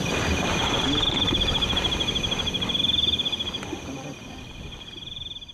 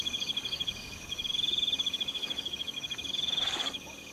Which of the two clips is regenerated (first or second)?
second